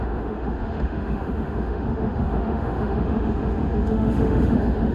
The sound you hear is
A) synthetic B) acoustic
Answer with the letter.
A